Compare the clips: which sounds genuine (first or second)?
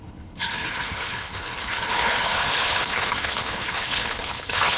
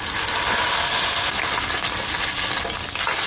second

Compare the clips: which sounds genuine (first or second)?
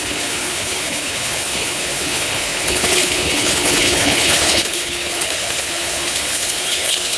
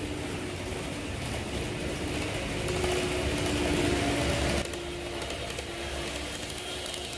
second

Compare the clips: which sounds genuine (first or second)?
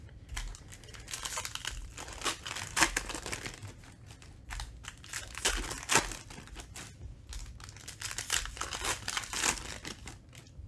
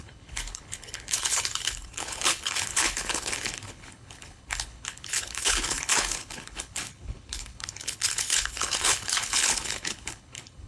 first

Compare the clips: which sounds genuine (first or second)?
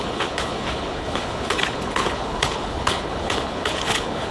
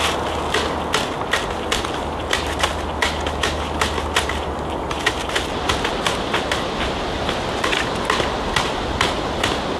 second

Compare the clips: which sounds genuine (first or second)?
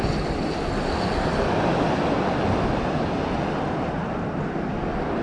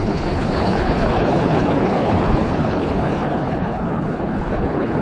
first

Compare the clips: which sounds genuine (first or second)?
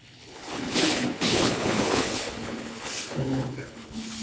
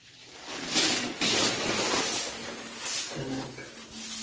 second